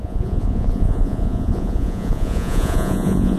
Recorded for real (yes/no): no